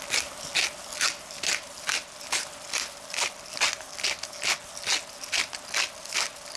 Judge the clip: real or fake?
real